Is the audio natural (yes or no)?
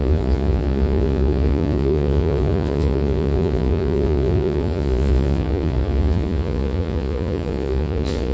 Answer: no